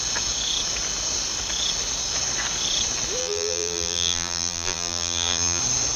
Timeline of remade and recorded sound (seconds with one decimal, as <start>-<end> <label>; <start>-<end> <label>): 0.0-3.2 recorded; 3.2-5.6 remade; 5.6-6.0 recorded